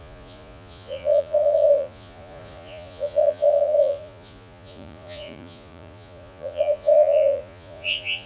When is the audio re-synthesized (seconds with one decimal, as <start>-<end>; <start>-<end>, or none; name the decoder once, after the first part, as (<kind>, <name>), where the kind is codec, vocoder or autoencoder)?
0.0-8.3 (vocoder, Vocos)